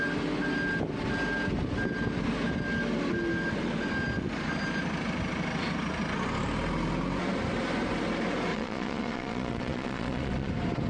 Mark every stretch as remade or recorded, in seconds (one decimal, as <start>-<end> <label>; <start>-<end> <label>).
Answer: 0.0-8.5 recorded; 8.5-10.5 remade; 10.5-10.9 recorded